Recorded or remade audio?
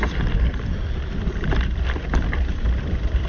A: remade